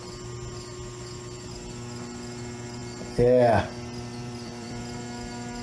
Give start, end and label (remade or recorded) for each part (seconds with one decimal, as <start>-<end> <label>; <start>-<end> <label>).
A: 0.0-4.2 recorded; 4.2-4.8 remade; 4.8-5.6 recorded